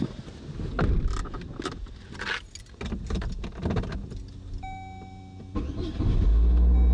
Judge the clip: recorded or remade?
recorded